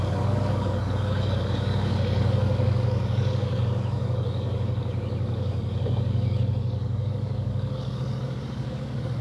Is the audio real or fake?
fake